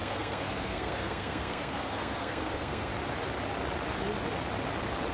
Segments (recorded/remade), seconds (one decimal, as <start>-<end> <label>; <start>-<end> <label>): 0.0-2.9 remade; 2.9-5.1 recorded